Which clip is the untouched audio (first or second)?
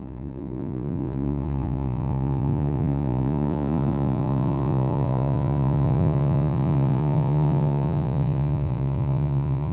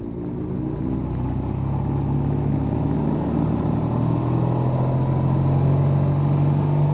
second